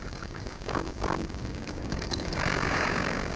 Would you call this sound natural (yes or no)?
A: no